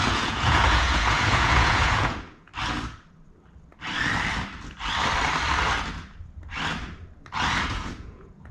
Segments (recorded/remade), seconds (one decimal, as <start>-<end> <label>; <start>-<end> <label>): 0.0-2.5 remade; 2.5-7.6 recorded; 7.6-8.5 remade